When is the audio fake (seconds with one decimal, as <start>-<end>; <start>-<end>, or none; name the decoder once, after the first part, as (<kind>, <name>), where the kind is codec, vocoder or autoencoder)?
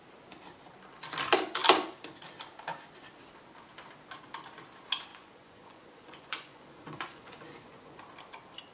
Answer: 5.1-8.0 (vocoder, Vocos)